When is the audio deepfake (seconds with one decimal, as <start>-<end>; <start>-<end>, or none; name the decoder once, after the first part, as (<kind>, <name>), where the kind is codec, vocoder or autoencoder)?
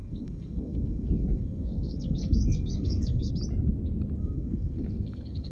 0.0-3.3 (codec, SNAC); 4.2-5.5